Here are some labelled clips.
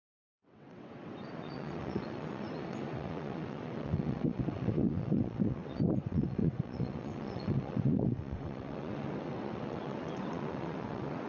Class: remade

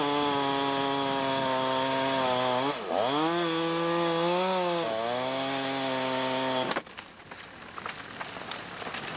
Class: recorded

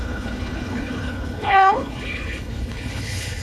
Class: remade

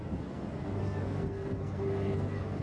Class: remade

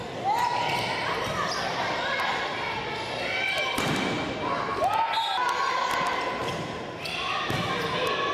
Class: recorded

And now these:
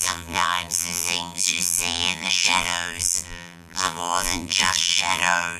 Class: remade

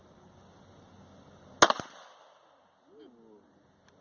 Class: recorded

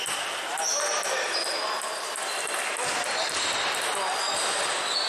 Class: recorded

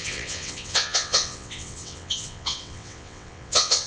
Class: remade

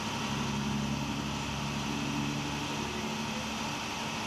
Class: recorded